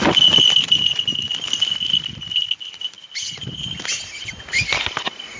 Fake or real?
real